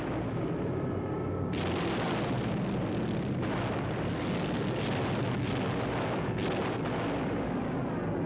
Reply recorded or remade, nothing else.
recorded